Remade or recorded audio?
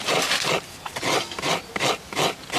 recorded